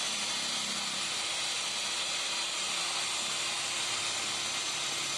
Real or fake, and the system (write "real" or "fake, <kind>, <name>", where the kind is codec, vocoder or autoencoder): real